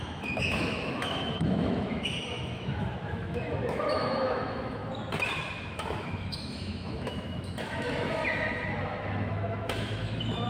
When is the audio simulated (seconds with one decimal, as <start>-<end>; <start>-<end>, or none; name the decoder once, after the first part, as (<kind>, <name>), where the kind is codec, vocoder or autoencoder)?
0.0-4.8 (autoencoder, DAC-VAE); 5.5-8.2; 8.8-10.5